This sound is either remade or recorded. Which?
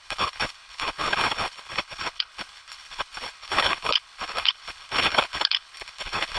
remade